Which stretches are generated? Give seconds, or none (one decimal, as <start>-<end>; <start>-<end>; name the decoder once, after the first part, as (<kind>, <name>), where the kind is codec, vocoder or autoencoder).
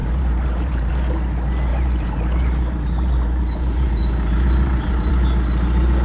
0.0-0.9 (vocoder, BigVGAN v2); 1.7-5.1